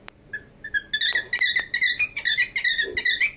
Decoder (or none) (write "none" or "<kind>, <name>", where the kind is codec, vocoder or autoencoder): none